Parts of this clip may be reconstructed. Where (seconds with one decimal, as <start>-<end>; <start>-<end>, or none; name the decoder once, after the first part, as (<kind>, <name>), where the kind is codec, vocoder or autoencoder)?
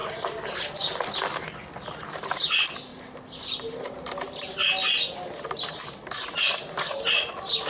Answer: none